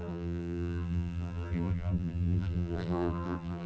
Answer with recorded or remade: remade